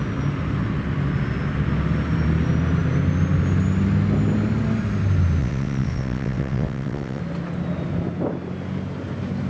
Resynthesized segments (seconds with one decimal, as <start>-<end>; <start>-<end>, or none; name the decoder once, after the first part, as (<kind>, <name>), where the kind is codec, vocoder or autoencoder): 5.4-7.2 (vocoder, WaveNeXt)